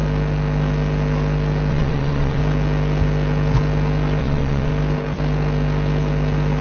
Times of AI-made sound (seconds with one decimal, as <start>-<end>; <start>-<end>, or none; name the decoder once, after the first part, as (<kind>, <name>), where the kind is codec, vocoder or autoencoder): 1.7-2.4 (vocoder, WaveNeXt); 4.2-4.7